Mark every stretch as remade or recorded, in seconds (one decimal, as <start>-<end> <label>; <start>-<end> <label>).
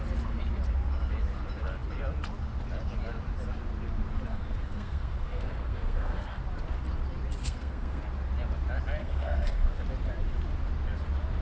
0.0-4.3 recorded; 4.3-6.4 remade; 6.4-7.4 recorded; 7.4-8.0 remade; 8.0-9.0 recorded; 9.0-9.8 remade; 9.8-11.4 recorded